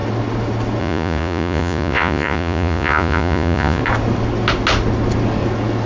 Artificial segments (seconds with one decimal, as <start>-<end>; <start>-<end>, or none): 0.8-3.8